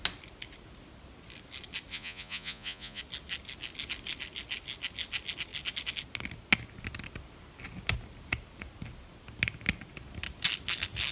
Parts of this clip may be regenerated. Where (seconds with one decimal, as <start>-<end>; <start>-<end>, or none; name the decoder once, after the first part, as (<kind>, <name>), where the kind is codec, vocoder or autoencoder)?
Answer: 1.9-3.0 (vocoder, Vocos)